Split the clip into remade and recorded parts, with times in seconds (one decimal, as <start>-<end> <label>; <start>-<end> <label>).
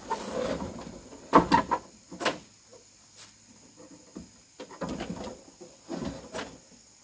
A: 0.0-7.0 recorded